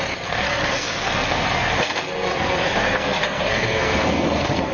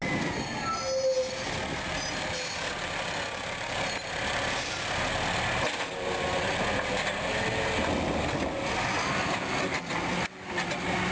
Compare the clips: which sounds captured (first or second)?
second